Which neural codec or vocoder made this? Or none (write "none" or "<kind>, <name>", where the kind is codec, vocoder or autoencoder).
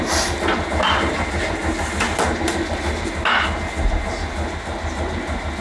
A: none